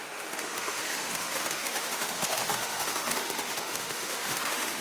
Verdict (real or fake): fake